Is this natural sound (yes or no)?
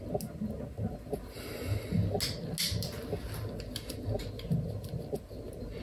yes